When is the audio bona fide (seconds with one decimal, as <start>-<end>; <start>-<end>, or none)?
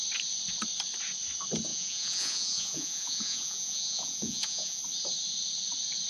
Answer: 0.0-1.7; 4.8-6.1